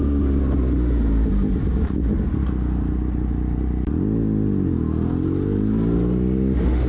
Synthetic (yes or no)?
no